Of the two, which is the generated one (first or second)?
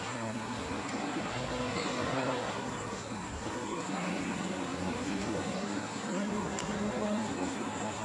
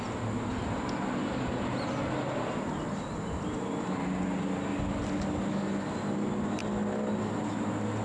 first